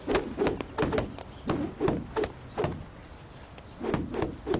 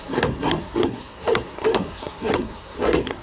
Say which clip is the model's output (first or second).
second